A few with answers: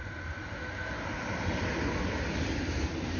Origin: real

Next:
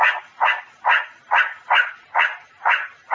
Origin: real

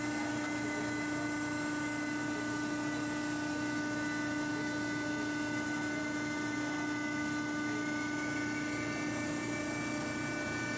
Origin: real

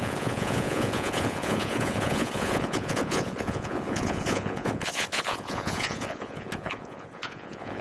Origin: fake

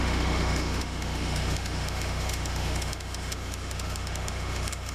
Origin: fake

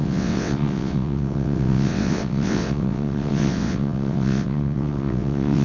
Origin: fake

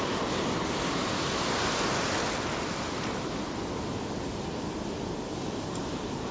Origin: real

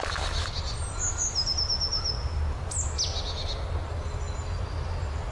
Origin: real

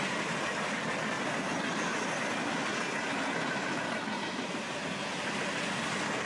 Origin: real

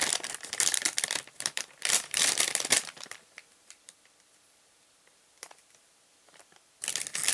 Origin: fake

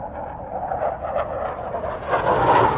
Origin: real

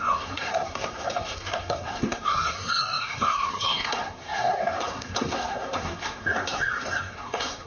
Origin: fake